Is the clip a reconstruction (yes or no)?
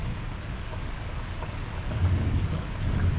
yes